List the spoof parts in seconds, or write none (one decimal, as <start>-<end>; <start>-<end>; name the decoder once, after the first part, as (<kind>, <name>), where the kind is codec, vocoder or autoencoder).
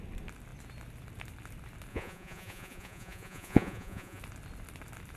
1.9-4.2 (vocoder, Vocos)